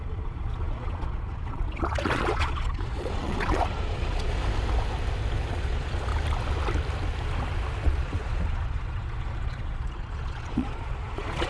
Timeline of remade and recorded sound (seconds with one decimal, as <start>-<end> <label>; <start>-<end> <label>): 0.0-4.4 remade; 4.4-5.5 recorded; 5.5-6.1 remade; 6.1-7.8 recorded; 7.8-11.5 remade